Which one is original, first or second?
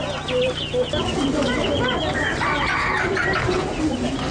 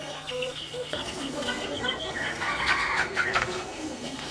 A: first